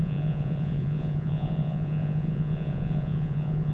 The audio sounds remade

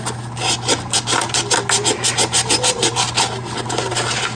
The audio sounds recorded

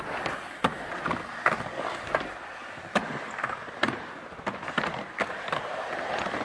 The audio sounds recorded